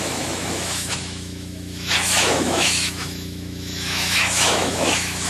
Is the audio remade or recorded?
remade